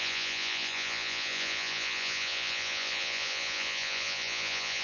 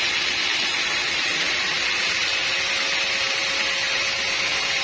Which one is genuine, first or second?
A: second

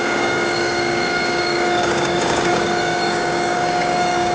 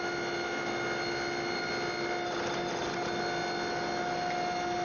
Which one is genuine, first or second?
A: second